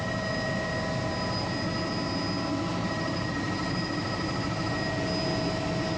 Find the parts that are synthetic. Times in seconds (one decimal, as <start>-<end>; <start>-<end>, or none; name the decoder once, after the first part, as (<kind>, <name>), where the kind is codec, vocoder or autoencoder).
2.7-4.7 (vocoder, BigVGAN v2)